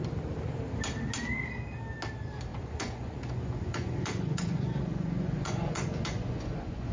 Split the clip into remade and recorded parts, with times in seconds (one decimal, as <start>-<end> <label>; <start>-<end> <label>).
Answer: 0.0-2.5 recorded; 2.5-6.9 remade